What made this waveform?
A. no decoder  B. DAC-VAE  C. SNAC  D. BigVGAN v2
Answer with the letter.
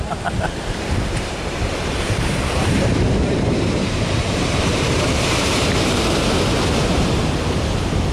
D